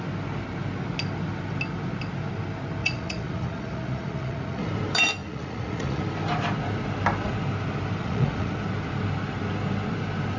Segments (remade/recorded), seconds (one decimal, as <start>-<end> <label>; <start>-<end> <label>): 0.0-2.8 recorded; 2.8-4.7 remade; 4.7-5.2 recorded; 5.2-6.0 remade; 6.0-8.0 recorded; 8.0-8.5 remade; 8.5-10.4 recorded